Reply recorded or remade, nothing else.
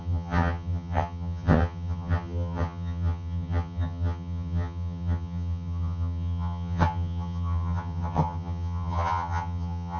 remade